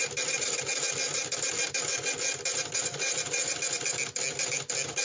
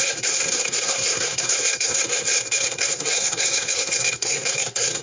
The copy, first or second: second